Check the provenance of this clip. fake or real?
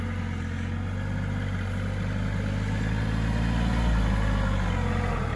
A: real